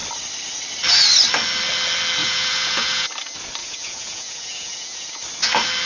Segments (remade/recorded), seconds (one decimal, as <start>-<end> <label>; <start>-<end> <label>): 0.0-2.2 recorded; 2.2-3.1 remade; 3.1-3.6 recorded; 3.6-5.2 remade; 5.2-5.9 recorded